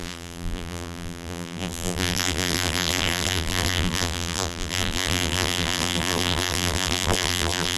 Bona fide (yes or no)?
no